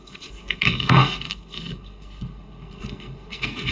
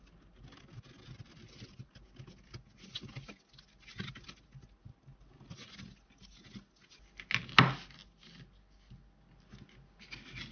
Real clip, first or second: second